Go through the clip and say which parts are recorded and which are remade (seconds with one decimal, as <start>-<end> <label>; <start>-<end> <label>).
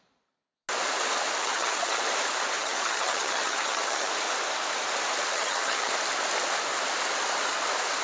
0.0-1.4 recorded; 1.4-2.0 remade; 2.0-2.6 recorded; 2.6-4.1 remade; 4.1-5.3 recorded; 5.3-5.9 remade; 5.9-8.0 recorded